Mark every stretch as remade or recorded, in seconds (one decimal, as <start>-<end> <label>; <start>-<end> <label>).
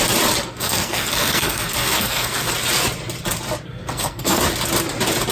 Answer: 0.0-0.4 recorded; 0.4-2.5 remade; 2.5-3.8 recorded; 3.8-4.4 remade; 4.4-5.3 recorded